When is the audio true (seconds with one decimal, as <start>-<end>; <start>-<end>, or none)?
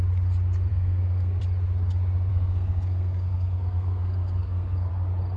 0.0-0.7; 1.4-2.3; 4.9-5.4